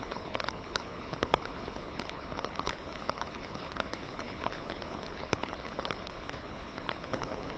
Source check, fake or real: fake